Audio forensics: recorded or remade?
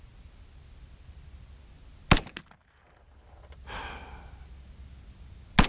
recorded